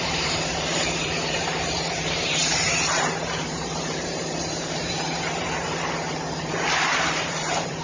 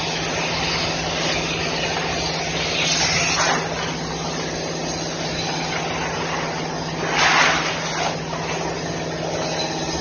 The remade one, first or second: first